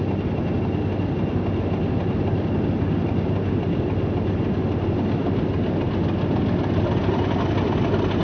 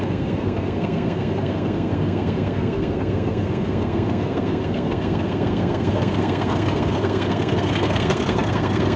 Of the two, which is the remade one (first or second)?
second